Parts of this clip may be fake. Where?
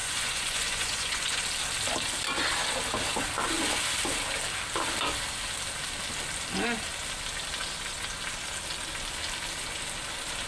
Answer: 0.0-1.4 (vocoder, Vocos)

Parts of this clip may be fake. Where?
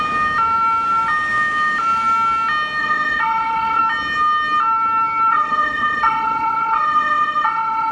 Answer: 2.8-3.8 (vocoder, WaveNeXt); 5.3-7.9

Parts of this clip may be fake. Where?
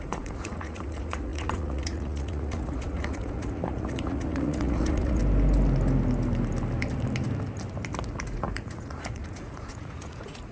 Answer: 0.0-5.2 (vocoder, Vocos); 8.1-10.5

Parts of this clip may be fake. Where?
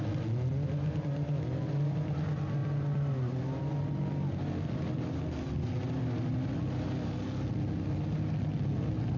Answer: none